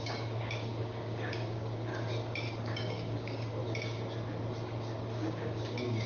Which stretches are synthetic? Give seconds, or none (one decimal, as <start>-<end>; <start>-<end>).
0.0-1.9; 2.6-3.5; 5.1-6.1